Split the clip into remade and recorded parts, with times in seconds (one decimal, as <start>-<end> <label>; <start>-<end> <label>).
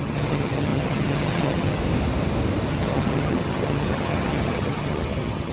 0.0-1.8 remade; 1.8-2.7 recorded; 2.7-5.5 remade